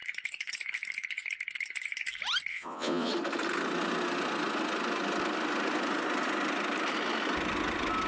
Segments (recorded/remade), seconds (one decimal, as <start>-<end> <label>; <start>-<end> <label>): 0.0-2.5 recorded; 2.5-3.1 remade; 3.1-8.1 recorded